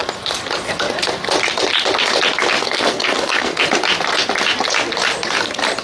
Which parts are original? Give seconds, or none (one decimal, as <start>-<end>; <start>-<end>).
0.0-2.6; 3.6-5.8